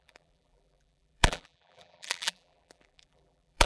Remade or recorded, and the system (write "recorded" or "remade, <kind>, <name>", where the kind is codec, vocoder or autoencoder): remade, vocoder, BigVGAN v2